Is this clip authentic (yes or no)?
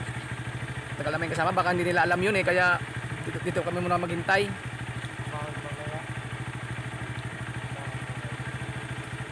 yes